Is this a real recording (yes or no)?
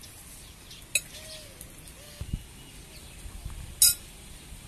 yes